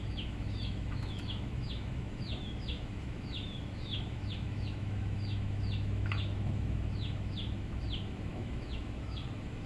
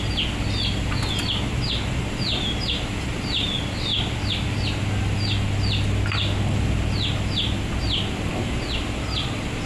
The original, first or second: second